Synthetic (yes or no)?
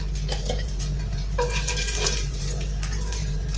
yes